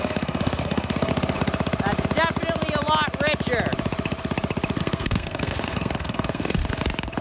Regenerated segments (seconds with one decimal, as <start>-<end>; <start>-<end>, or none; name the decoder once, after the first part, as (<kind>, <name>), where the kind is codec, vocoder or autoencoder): 0.0-1.1 (codec, SNAC); 4.8-6.6